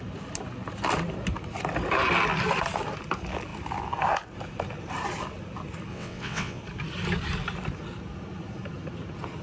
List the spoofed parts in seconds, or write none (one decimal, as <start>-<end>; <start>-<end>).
5.9-6.6